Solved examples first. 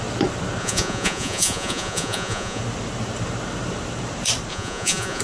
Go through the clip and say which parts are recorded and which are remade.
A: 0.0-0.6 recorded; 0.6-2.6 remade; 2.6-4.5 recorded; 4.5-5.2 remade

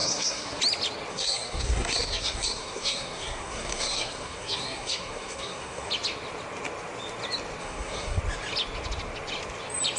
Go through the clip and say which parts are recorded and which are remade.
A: 0.0-0.6 remade; 0.6-1.1 recorded; 1.1-5.9 remade; 5.9-7.6 recorded; 7.6-8.2 remade; 8.2-10.0 recorded

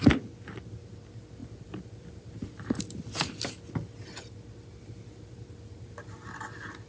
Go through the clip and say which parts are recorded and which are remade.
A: 0.0-1.4 recorded; 1.4-2.8 remade; 2.8-6.9 recorded

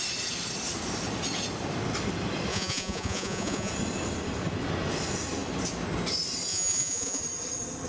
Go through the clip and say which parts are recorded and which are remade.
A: 0.0-2.5 recorded; 2.5-3.7 remade; 3.7-6.5 recorded; 6.5-7.2 remade; 7.2-7.9 recorded

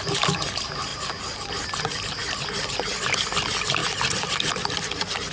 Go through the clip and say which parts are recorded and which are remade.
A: 0.0-0.9 recorded; 0.9-1.5 remade; 1.5-2.2 recorded; 2.2-2.7 remade; 2.7-5.3 recorded

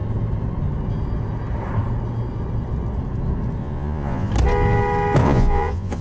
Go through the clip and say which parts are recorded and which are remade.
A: 0.0-3.6 recorded; 3.6-4.3 remade; 4.3-5.2 recorded; 5.2-6.0 remade